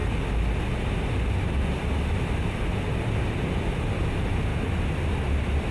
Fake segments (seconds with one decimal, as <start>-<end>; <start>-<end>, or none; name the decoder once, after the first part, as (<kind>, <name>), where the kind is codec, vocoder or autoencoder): none